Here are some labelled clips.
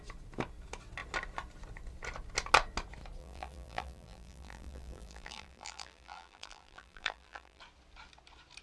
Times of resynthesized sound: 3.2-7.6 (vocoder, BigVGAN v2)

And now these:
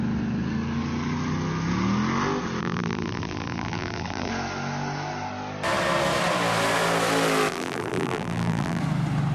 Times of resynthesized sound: 2.6-4.3 (vocoder, BigVGAN v2); 7.5-8.8